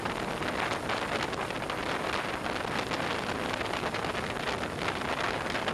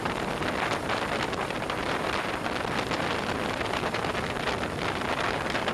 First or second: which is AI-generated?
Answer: second